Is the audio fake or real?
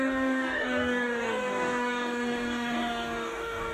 fake